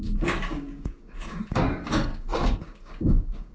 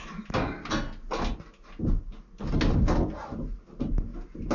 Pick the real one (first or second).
second